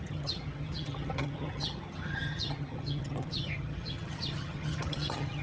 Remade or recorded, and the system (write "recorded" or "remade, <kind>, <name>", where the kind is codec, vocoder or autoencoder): remade, vocoder, HiFi-GAN